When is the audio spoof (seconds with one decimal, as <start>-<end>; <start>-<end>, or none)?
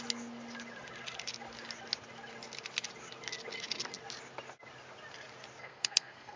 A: 5.6-6.4